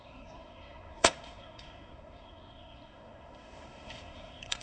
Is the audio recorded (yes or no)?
no